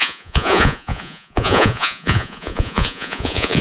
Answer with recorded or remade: remade